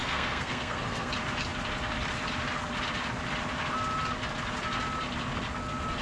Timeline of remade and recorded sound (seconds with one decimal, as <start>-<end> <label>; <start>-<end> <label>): 0.0-1.1 remade; 1.1-6.0 recorded